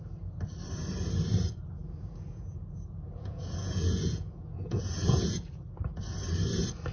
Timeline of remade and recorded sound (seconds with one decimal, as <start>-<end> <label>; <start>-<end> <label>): 0.0-1.8 recorded; 1.8-5.6 remade; 5.6-6.9 recorded

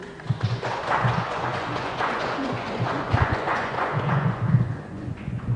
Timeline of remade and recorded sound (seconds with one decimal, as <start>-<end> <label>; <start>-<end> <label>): 0.0-5.6 remade

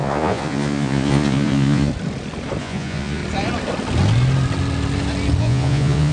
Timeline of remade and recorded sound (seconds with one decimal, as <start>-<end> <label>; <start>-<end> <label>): 0.0-1.9 remade; 1.9-2.6 recorded; 2.6-3.2 remade; 3.2-5.4 recorded; 5.4-6.1 remade

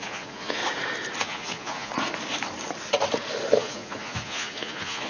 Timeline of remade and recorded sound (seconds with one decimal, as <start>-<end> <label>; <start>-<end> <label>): 0.0-0.6 remade; 0.6-1.2 recorded; 1.2-1.9 remade; 1.9-3.6 recorded; 3.6-5.1 remade